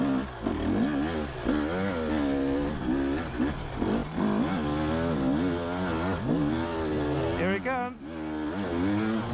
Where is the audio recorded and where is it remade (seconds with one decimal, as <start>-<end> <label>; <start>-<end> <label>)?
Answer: 0.0-9.3 recorded